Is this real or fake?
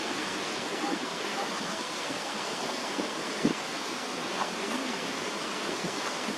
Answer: fake